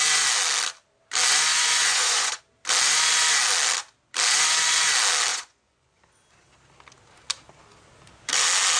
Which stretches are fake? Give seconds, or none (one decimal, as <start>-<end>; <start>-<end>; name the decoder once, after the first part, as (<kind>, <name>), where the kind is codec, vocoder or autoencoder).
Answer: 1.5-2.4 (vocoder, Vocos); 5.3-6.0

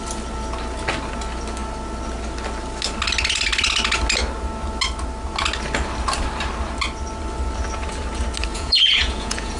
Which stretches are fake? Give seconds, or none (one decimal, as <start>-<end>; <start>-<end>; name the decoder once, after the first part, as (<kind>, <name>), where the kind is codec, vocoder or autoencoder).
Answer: 8.5-9.6 (vocoder, Vocos)

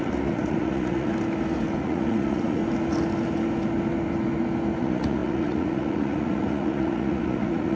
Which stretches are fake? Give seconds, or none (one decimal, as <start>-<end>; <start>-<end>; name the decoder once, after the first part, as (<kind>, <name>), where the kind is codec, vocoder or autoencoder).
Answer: 0.0-1.1 (vocoder, Vocos); 1.8-2.6; 4.8-7.8

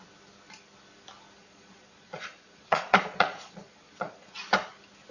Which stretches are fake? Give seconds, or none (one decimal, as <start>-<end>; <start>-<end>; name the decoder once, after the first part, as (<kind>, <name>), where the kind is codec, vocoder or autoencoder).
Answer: 1.4-4.5 (vocoder, Vocos)